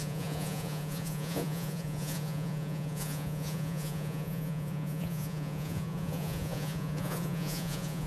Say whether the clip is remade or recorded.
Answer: remade